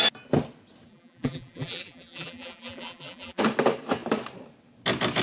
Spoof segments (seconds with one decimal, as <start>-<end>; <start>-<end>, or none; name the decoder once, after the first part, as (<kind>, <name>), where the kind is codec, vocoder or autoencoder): 0.9-3.4 (vocoder, BigVGAN v2)